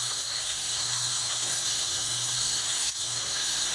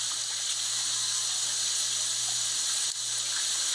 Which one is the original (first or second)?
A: second